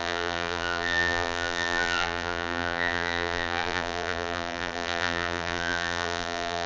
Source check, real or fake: fake